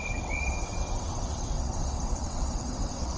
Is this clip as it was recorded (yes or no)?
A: no